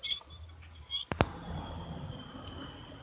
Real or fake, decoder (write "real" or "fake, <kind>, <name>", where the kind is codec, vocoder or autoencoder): real